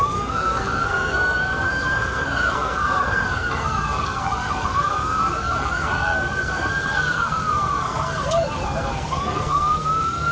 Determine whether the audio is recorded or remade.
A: remade